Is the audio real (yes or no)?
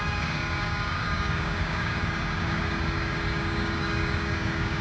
no